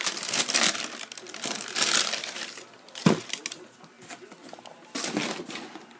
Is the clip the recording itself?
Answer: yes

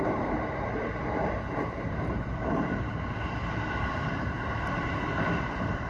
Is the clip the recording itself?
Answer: no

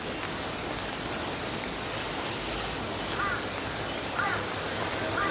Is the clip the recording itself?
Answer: yes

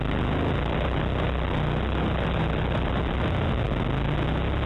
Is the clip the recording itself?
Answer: yes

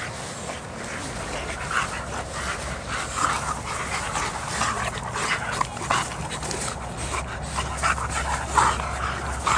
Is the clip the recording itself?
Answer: yes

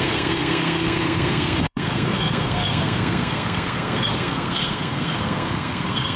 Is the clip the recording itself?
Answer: no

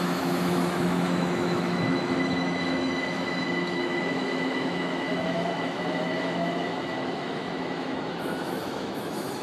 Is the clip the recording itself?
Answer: no